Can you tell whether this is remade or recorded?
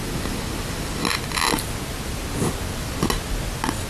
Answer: recorded